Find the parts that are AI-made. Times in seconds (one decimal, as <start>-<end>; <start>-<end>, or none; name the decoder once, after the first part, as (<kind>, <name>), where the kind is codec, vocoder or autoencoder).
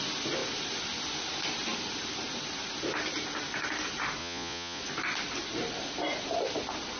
4.2-4.8 (vocoder, Vocos)